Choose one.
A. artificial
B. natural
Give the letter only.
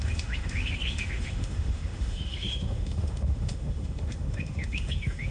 A